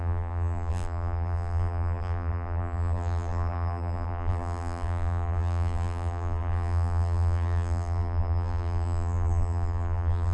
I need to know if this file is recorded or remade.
remade